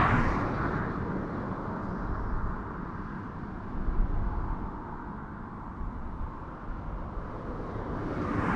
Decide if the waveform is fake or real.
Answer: real